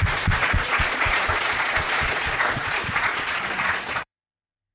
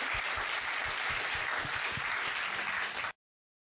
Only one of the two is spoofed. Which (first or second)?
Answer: first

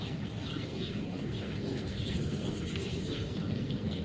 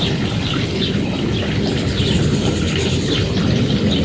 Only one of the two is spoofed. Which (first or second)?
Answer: first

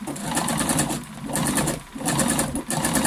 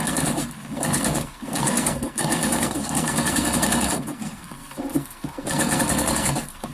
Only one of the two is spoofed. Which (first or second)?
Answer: second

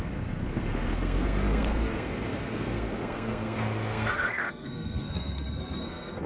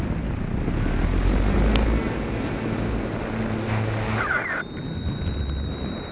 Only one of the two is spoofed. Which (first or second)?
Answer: first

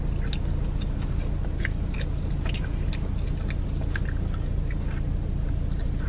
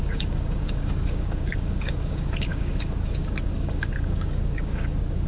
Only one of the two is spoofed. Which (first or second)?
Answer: second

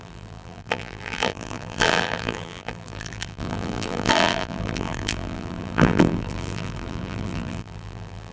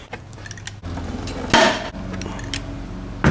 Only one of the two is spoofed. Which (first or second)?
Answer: first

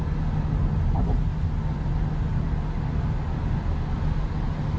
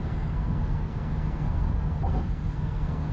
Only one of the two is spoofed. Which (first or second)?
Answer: second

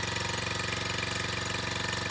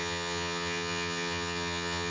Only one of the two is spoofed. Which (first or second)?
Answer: second